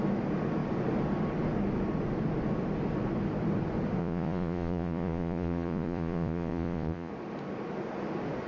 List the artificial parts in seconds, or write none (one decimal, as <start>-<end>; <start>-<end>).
4.0-7.1